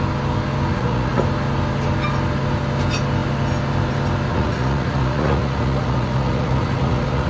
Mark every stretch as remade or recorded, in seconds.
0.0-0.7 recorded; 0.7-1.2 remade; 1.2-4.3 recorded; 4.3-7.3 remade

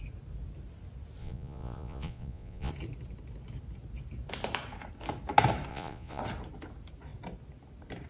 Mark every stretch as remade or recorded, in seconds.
0.0-1.2 recorded; 1.2-2.7 remade; 2.7-5.7 recorded; 5.7-6.2 remade; 6.2-8.1 recorded

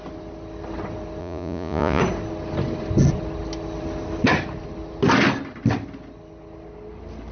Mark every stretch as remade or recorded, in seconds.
0.0-1.2 recorded; 1.2-2.0 remade; 2.0-7.3 recorded